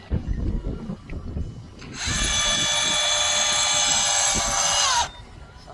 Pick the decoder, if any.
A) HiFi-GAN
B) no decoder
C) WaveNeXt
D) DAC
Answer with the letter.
B